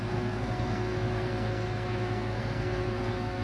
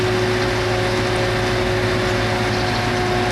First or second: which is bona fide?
second